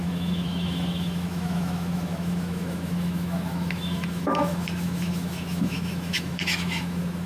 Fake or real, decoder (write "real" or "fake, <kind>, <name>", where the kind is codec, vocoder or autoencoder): fake, autoencoder, DAC-VAE